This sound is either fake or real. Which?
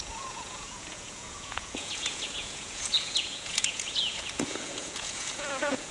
fake